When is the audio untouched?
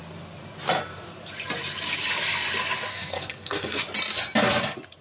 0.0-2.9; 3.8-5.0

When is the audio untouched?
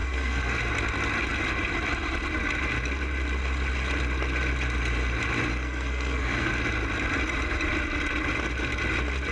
0.6-5.5; 6.5-9.3